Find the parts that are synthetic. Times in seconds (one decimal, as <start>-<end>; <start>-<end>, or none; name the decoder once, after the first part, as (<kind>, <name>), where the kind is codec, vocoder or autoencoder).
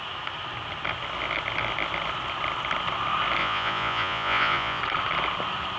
3.4-4.8 (vocoder, Vocos)